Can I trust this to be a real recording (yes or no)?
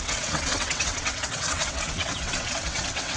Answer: no